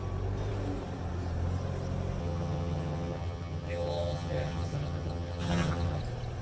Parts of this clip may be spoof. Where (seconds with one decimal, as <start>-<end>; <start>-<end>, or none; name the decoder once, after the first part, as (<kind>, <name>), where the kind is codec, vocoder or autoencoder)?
2.2-6.0 (vocoder, HiFi-GAN)

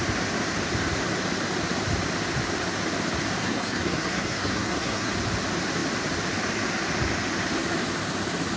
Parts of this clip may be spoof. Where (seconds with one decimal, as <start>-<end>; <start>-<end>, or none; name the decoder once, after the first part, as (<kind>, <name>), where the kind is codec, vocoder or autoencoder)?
3.4-5.1 (codec, SNAC)

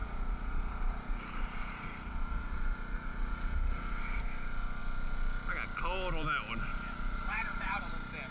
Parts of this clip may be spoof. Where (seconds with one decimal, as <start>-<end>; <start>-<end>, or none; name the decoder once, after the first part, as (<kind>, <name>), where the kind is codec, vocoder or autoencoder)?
0.0-4.2 (vocoder, Vocos); 6.7-7.9

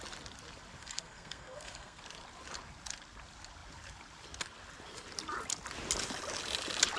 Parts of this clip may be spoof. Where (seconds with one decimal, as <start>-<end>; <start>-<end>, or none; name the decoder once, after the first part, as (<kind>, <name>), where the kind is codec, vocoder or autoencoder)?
0.8-2.0 (codec, SNAC)

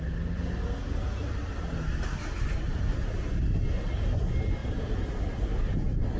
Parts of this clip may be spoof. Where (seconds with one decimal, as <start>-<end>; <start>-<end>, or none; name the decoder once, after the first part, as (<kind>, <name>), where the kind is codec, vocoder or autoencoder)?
2.7-3.3 (vocoder, BigVGAN v2); 4.6-5.7

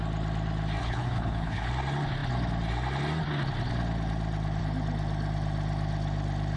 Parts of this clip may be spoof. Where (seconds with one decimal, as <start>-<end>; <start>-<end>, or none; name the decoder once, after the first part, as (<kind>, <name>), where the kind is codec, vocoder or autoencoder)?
0.8-1.7 (codec, HILCodec)